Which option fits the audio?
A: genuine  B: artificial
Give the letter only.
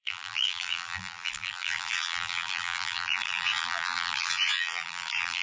B